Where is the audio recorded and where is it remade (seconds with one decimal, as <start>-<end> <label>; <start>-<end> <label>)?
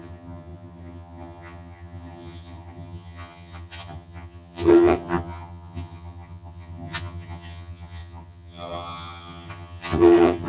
0.0-10.5 remade